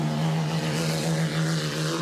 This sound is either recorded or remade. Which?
recorded